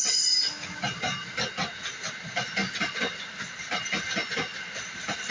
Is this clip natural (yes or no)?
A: yes